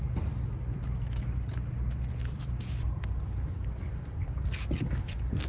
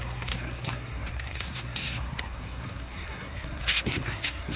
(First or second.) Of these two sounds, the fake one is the second